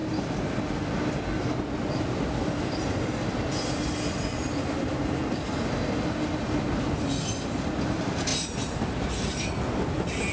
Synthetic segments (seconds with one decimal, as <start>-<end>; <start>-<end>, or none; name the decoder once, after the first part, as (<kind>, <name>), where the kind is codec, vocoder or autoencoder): 8.3-9.5 (vocoder, BigVGAN v2)